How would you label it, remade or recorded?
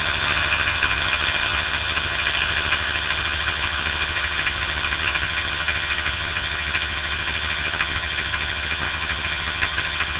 remade